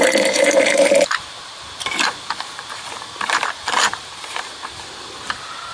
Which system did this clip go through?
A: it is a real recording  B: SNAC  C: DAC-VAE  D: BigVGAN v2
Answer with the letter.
D